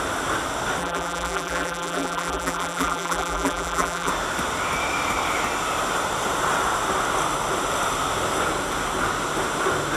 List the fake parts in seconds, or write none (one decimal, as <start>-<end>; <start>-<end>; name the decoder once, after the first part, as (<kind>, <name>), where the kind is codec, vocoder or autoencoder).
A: 0.8-4.1 (vocoder, BigVGAN v2)